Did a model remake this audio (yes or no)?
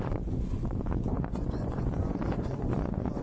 yes